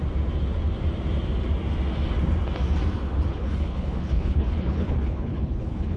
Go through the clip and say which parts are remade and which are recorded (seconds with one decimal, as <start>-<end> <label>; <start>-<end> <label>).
0.0-3.3 recorded; 3.3-6.0 remade